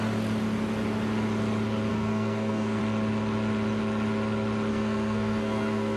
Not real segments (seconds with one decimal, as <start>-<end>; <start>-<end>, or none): 1.9-2.8; 4.7-6.0